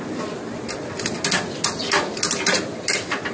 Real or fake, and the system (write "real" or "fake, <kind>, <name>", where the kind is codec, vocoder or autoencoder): real